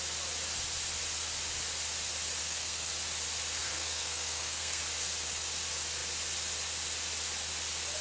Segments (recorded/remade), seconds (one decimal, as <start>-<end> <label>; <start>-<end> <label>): 0.0-2.4 recorded; 2.4-2.9 remade; 2.9-3.6 recorded; 3.6-4.8 remade; 4.8-8.0 recorded